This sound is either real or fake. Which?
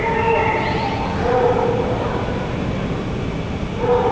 real